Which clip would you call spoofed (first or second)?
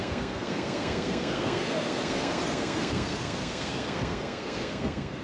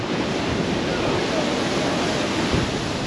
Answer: first